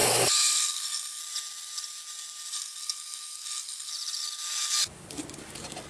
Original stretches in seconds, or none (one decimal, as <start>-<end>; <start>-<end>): 1.2-2.5; 3.9-5.9